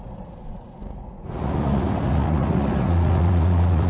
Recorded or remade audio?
remade